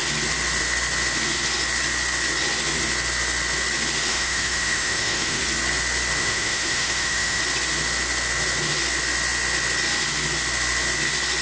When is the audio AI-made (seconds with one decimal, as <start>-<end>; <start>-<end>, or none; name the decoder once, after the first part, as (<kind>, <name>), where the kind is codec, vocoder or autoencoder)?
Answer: 4.1-5.4 (autoencoder, DAC-VAE); 6.2-7.4